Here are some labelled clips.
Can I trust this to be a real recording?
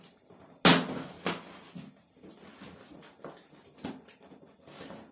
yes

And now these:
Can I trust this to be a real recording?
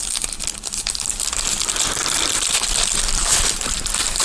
no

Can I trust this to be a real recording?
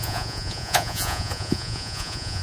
no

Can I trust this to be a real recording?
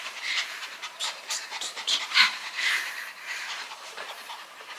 no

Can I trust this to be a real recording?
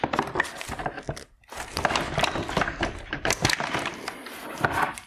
yes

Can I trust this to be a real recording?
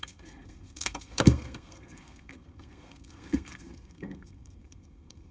no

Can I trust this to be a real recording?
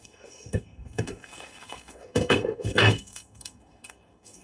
no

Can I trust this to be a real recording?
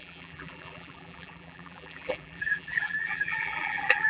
no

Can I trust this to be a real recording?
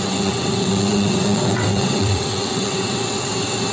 no